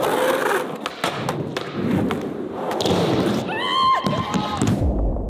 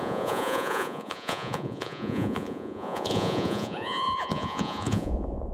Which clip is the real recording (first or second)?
first